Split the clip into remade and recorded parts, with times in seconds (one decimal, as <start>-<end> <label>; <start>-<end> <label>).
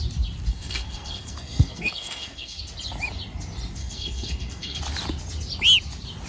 0.0-0.5 recorded; 0.5-2.6 remade; 2.6-3.8 recorded; 3.8-4.8 remade; 4.8-6.3 recorded